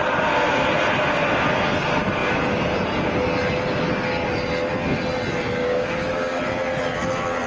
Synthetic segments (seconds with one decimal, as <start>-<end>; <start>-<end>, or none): 5.6-6.4